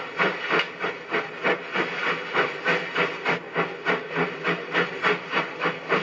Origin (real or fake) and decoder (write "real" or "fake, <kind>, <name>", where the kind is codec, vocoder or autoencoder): real